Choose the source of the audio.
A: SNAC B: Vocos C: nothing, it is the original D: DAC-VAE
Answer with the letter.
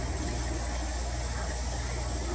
C